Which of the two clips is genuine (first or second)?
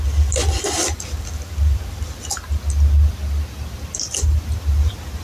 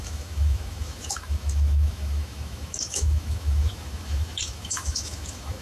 first